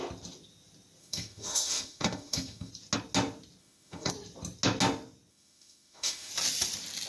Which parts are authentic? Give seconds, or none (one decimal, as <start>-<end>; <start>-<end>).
0.0-1.0; 2.7-3.6; 4.1-5.3; 6.3-7.1